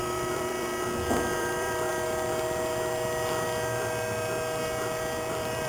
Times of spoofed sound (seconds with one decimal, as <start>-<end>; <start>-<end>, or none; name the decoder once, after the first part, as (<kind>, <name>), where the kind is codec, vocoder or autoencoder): 0.0-0.7 (vocoder, BigVGAN v2); 1.4-1.9; 5.3-5.7